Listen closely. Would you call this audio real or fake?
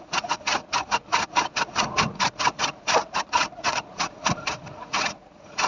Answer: fake